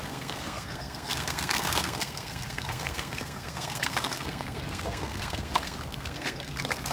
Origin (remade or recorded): remade